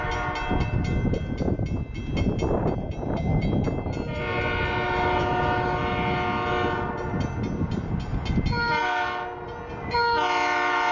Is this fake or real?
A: real